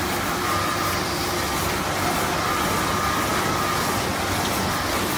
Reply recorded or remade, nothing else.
recorded